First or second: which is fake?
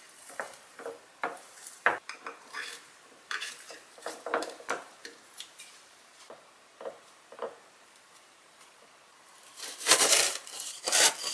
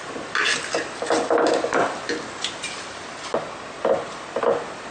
first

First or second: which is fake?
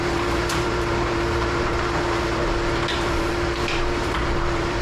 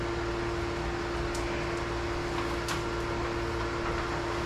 first